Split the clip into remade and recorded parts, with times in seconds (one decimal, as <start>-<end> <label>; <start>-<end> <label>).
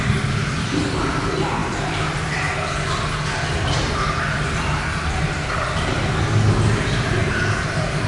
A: 0.0-1.6 recorded; 1.6-2.3 remade; 2.3-7.2 recorded; 7.2-8.1 remade